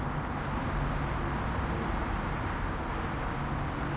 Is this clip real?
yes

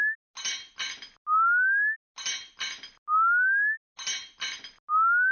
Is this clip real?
yes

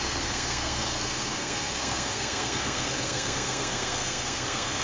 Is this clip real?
no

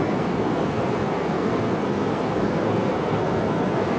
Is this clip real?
no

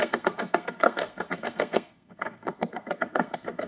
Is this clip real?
no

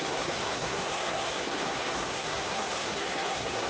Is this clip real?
no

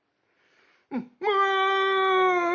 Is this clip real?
yes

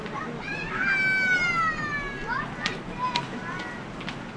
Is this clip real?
yes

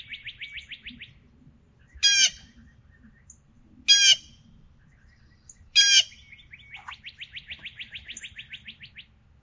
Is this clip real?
yes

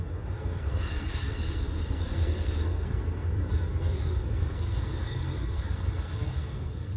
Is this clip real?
no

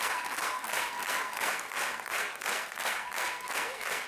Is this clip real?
no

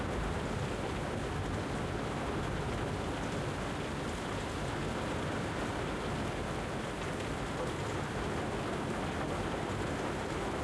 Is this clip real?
yes